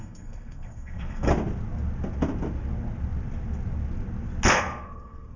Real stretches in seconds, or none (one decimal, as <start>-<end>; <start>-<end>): 1.3-4.5